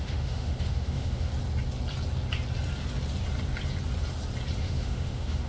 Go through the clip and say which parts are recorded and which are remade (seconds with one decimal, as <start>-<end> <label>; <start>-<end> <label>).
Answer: 0.0-1.3 remade; 1.3-4.6 recorded; 4.6-5.5 remade